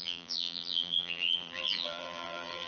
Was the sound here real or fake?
fake